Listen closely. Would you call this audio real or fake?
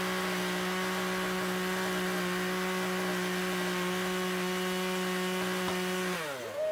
real